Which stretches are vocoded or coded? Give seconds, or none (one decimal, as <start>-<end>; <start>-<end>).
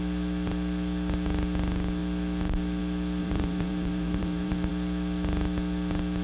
3.2-4.7